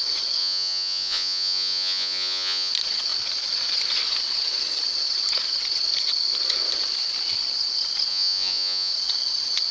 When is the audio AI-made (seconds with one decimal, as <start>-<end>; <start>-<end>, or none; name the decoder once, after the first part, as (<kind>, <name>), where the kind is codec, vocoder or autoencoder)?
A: 0.4-2.7 (vocoder, Vocos); 8.1-8.9